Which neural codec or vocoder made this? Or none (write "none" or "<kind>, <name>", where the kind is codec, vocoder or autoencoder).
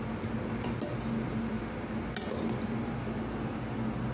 none